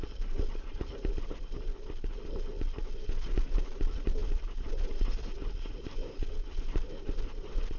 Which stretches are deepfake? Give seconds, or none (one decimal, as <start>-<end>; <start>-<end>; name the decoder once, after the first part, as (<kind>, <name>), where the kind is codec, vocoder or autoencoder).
none